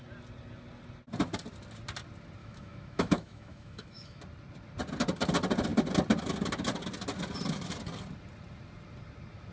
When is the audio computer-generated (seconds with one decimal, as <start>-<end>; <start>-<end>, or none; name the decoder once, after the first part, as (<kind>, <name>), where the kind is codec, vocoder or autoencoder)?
2.4-4.2 (autoencoder, DAC-VAE)